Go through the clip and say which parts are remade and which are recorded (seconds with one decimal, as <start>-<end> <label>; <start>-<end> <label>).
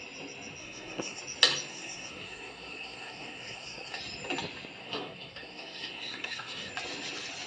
0.0-0.6 recorded; 0.6-1.2 remade; 1.2-1.7 recorded; 1.7-4.0 remade; 4.0-4.8 recorded; 4.8-6.7 remade; 6.7-7.5 recorded